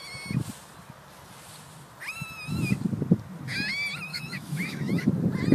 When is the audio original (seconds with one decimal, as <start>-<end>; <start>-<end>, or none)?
0.0-4.1; 5.1-5.5